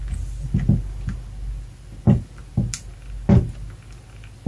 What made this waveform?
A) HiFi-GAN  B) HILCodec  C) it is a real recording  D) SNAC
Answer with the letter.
C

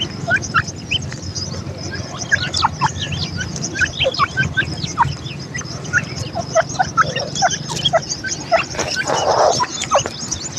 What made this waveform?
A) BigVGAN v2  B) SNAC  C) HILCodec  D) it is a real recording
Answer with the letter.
D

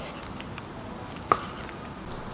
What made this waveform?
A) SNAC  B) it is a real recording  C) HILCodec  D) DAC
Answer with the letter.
B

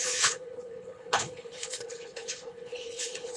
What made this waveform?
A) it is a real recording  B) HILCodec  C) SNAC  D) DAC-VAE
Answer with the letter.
B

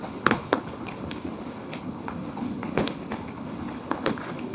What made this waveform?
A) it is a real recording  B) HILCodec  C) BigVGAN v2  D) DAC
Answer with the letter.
B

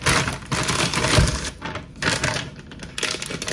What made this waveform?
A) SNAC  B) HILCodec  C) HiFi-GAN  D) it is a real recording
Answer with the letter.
D